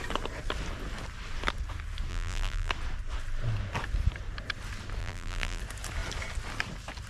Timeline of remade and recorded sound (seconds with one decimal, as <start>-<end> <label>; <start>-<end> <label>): 0.0-2.1 recorded; 2.1-2.7 remade; 2.7-5.0 recorded; 5.0-5.6 remade; 5.6-7.1 recorded